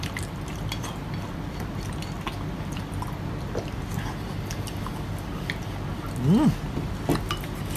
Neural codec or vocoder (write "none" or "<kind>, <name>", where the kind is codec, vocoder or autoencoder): none